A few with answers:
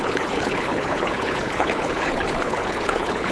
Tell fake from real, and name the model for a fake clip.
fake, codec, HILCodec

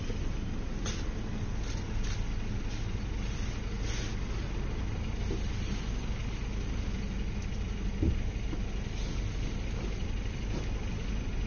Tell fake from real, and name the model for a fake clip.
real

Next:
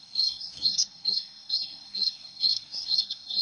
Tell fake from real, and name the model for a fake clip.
fake, codec, SNAC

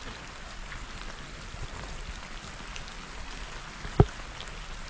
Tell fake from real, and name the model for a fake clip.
real